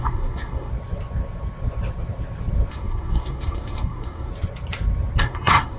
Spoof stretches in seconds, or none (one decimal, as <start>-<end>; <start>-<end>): 0.0-0.7; 2.7-4.3; 5.2-5.8